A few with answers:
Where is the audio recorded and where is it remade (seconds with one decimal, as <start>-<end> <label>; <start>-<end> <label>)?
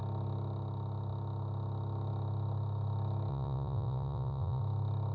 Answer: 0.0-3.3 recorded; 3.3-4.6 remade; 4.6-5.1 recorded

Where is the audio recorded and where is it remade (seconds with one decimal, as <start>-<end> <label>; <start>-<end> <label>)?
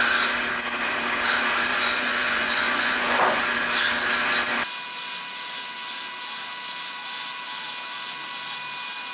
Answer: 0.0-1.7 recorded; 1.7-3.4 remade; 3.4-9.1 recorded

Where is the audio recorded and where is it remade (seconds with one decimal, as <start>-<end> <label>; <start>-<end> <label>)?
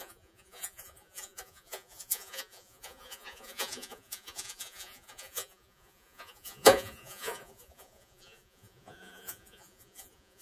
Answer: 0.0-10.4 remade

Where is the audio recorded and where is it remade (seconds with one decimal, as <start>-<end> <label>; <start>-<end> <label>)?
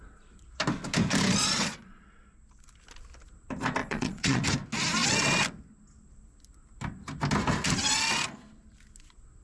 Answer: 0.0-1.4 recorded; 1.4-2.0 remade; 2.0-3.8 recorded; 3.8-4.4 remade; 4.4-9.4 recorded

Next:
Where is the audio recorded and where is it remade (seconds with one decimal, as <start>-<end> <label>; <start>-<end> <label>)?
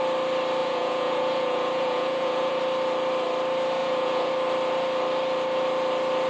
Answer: 0.0-0.6 recorded; 0.6-2.6 remade; 2.6-3.8 recorded; 3.8-4.3 remade; 4.3-6.3 recorded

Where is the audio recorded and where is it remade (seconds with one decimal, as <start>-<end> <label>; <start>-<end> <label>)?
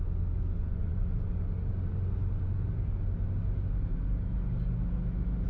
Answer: 0.0-0.6 recorded; 0.6-1.3 remade; 1.3-5.5 recorded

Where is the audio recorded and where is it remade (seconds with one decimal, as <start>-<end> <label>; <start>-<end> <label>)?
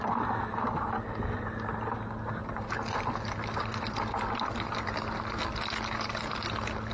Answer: 0.0-6.9 recorded